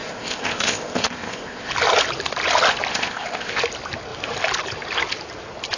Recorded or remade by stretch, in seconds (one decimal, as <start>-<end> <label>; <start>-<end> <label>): 0.0-1.7 remade; 1.7-2.9 recorded; 2.9-3.6 remade; 3.6-5.8 recorded